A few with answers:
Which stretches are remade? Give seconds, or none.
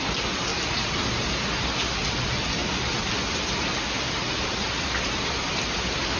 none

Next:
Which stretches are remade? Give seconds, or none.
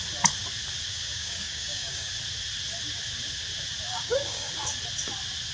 0.9-2.1 (codec, DAC); 3.9-4.5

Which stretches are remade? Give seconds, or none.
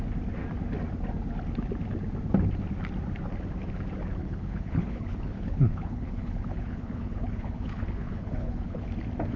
4.2-8.9 (codec, HILCodec)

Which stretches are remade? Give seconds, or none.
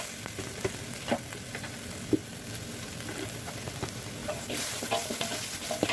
4.2-4.8 (vocoder, BigVGAN v2)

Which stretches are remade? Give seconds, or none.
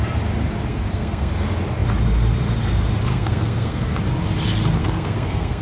0.7-1.3 (codec, SNAC); 3.1-4.0; 4.8-5.6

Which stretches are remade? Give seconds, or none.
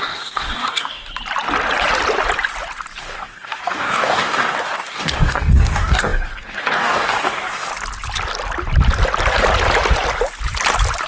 0.0-1.1 (codec, DAC); 3.0-7.7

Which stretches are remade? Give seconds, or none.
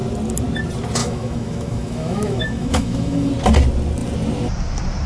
1.0-3.3 (autoencoder, DAC-VAE)